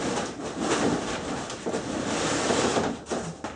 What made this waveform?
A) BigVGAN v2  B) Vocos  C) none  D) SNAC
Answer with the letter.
C